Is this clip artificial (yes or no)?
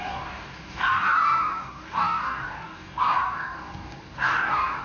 yes